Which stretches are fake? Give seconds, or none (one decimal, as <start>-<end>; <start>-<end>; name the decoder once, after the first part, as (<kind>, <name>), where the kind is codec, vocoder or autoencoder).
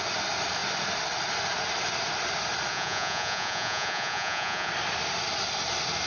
2.7-4.7 (vocoder, Vocos)